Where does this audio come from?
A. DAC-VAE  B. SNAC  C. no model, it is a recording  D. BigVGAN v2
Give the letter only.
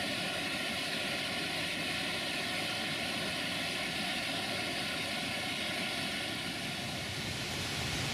C